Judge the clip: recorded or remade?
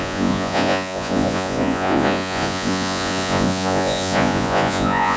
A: remade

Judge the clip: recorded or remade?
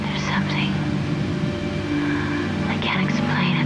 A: recorded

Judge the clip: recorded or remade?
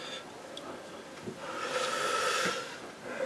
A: recorded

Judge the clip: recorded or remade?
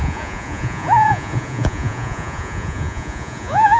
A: remade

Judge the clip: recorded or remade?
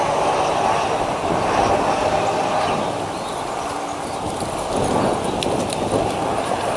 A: recorded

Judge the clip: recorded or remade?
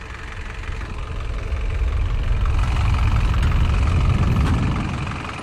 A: recorded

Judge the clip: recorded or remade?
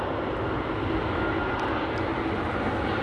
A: recorded